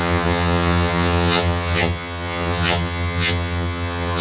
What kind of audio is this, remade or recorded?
remade